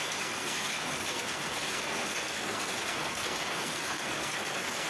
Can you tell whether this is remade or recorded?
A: remade